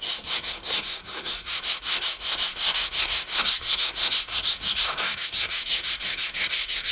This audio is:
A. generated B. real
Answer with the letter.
A